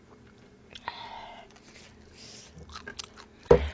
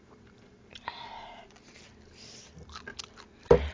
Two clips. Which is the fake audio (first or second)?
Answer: second